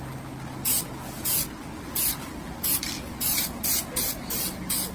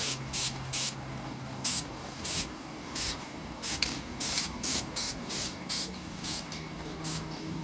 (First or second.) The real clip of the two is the first